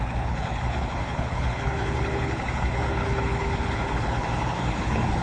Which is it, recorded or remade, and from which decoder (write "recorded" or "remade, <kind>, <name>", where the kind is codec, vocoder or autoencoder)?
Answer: remade, codec, HILCodec